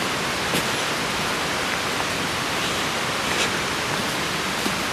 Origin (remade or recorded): recorded